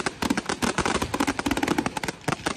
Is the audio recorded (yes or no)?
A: yes